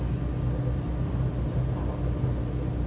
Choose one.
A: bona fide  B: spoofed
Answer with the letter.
A